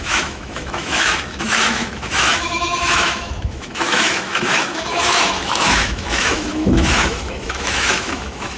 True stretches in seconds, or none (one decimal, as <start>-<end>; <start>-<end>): none